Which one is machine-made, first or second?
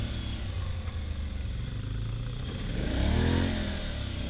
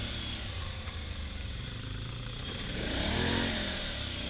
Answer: second